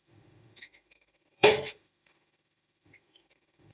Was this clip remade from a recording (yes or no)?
yes